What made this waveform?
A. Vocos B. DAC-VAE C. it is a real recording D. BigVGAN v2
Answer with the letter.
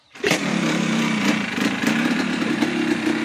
D